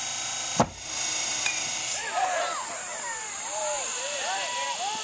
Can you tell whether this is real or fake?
real